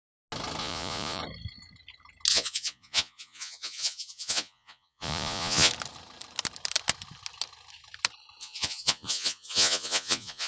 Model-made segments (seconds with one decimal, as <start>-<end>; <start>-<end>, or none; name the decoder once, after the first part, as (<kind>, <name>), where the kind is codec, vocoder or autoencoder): 0.6-1.2 (vocoder, Vocos); 2.3-5.7; 8.4-10.5